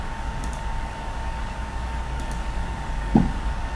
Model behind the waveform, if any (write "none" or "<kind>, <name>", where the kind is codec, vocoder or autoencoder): codec, DAC